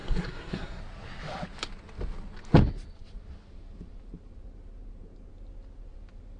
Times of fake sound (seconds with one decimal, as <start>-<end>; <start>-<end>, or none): 0.0-0.8